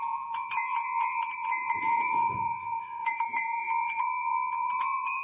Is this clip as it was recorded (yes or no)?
no